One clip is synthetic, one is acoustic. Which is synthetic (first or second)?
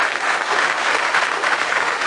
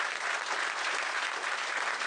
first